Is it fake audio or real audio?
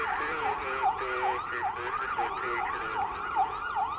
real